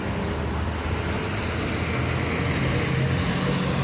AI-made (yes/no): no